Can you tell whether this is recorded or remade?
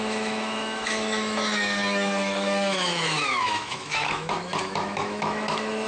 remade